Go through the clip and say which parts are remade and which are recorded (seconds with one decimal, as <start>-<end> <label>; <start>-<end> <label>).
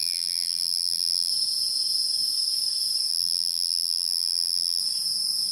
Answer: 0.0-1.3 remade; 1.3-3.1 recorded; 3.1-4.8 remade; 4.8-5.5 recorded